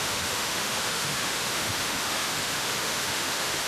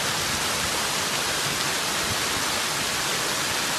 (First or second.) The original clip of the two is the second